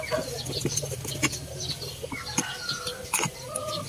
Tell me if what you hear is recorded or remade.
remade